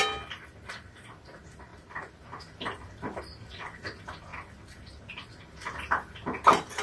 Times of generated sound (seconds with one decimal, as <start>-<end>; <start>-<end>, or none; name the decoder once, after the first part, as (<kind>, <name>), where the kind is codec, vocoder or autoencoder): none